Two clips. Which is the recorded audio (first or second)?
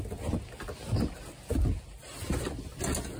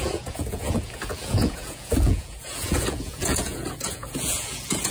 first